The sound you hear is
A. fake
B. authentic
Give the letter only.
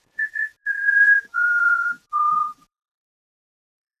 A